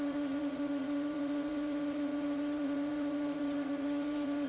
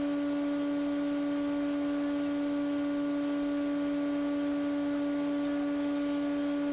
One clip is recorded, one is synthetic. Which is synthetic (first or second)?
first